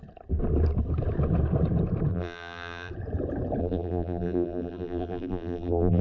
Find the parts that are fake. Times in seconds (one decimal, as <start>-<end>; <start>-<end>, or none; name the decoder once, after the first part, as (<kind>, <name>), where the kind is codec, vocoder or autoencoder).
2.1-2.9 (vocoder, BigVGAN v2); 3.6-6.0